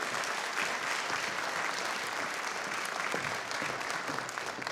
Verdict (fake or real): real